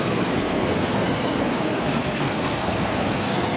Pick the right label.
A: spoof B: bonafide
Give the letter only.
A